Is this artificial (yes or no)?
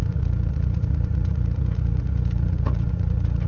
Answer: yes